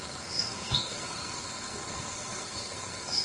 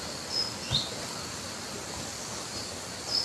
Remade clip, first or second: first